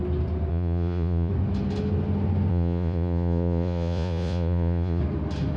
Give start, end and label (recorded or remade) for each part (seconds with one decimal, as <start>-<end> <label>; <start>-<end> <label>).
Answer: 0.0-0.5 recorded; 0.5-1.3 remade; 1.3-2.5 recorded; 2.5-5.0 remade; 5.0-5.6 recorded

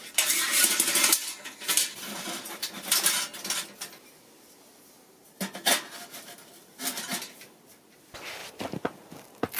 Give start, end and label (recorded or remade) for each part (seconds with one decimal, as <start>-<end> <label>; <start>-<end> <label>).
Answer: 0.0-0.6 remade; 0.6-1.3 recorded; 1.3-2.9 remade; 2.9-9.6 recorded

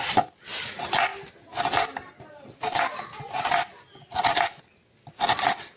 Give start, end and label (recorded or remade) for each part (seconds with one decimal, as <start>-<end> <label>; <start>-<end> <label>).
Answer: 0.0-5.8 recorded

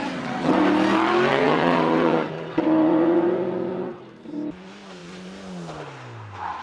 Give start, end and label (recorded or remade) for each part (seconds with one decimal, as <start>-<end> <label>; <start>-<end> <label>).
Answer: 0.0-0.6 remade; 0.6-1.3 recorded; 1.3-4.0 remade; 4.0-6.6 recorded

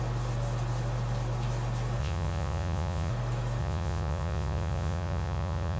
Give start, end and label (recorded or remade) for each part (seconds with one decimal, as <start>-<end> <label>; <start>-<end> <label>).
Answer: 0.0-2.0 recorded; 2.0-3.1 remade; 3.1-3.6 recorded; 3.6-5.8 remade

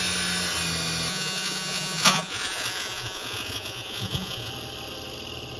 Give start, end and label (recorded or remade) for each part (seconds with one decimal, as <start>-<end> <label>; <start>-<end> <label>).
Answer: 0.0-1.1 recorded; 1.1-4.5 remade; 4.5-5.6 recorded